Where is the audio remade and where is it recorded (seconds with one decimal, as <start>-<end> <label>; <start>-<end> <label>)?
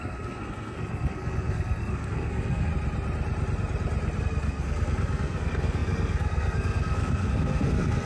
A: 0.0-2.7 remade; 2.7-4.2 recorded; 4.2-8.1 remade